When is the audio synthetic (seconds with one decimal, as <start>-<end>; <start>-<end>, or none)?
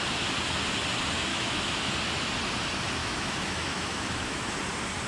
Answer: 1.3-1.9; 3.0-4.5